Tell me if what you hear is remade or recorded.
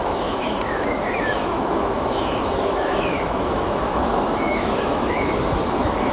remade